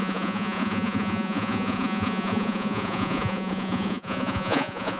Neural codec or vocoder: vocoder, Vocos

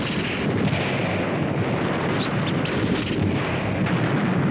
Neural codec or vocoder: none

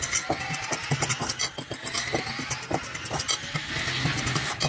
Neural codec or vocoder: none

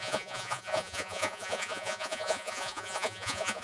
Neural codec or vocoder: vocoder, Vocos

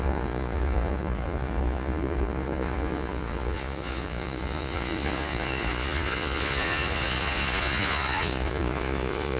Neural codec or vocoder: vocoder, Vocos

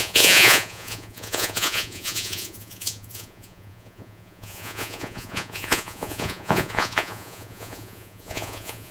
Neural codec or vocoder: vocoder, Vocos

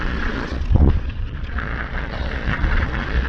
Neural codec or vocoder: vocoder, Vocos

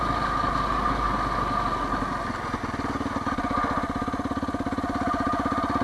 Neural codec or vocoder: none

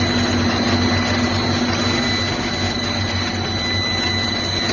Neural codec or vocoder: none